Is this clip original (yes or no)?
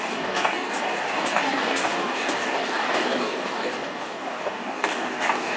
no